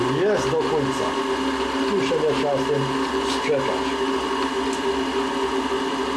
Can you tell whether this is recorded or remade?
recorded